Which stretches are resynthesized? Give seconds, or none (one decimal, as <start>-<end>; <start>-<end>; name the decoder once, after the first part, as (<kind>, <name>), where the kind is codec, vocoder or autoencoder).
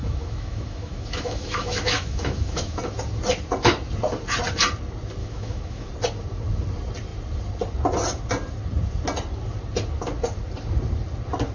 0.0-2.8 (autoencoder, DAC-VAE); 5.2-5.9